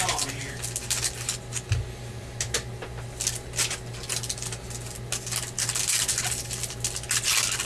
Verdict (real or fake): real